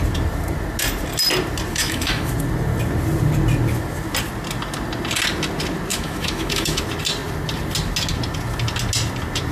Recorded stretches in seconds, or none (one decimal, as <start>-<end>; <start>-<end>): 0.0-1.7; 2.3-5.9; 6.8-9.5